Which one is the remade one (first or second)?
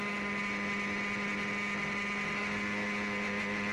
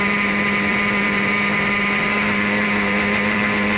second